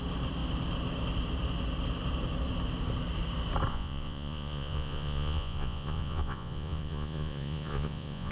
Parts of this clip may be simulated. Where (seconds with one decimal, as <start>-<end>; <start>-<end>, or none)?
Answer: 3.7-8.3